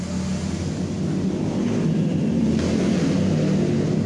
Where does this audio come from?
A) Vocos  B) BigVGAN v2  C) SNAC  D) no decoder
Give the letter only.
D